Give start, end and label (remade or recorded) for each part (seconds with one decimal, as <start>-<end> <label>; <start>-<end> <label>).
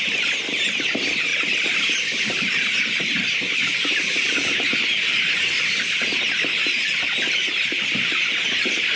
0.0-9.0 recorded